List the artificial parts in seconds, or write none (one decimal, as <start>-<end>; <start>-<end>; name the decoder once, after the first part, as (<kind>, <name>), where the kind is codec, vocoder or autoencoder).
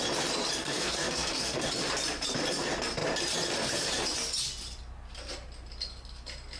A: 0.6-1.7 (codec, SNAC)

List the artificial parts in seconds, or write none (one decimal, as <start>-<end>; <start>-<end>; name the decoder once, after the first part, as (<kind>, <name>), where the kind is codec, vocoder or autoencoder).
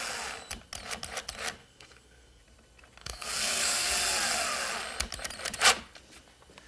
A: 1.6-2.4 (codec, SNAC); 3.0-3.9